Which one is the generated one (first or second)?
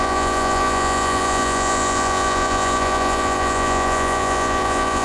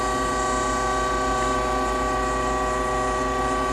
first